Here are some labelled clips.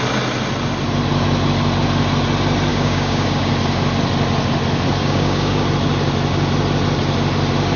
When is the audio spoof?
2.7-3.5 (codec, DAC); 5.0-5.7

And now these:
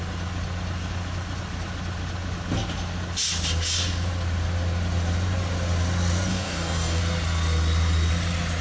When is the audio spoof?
6.3-7.0 (codec, DAC)

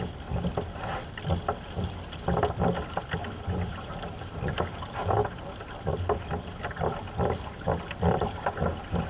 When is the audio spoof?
none

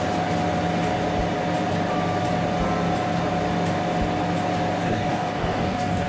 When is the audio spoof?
4.8-6.1 (codec, DAC)

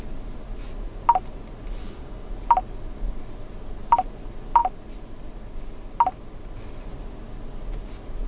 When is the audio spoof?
1.8-2.3 (codec, DAC)